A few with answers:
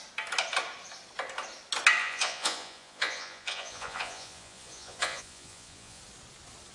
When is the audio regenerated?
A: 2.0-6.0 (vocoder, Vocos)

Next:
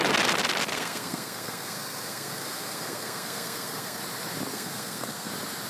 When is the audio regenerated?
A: 0.7-4.0 (codec, SNAC); 4.5-5.3

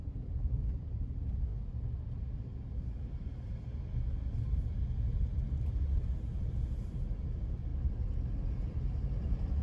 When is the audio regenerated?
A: 0.0-1.5 (vocoder, BigVGAN v2); 6.4-7.7; 8.5-9.6